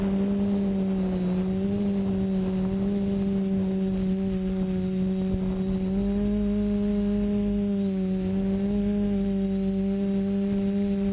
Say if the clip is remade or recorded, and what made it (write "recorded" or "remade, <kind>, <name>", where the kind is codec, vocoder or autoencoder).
recorded